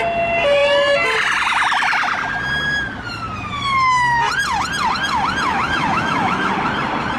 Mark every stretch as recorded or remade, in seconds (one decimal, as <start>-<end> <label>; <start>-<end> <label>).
0.0-5.5 recorded; 5.5-6.5 remade; 6.5-7.2 recorded